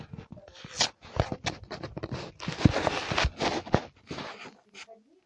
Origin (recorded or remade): recorded